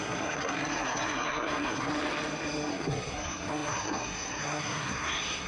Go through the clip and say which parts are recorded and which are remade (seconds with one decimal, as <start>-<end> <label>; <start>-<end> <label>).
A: 0.0-1.9 remade; 1.9-2.7 recorded; 2.7-5.5 remade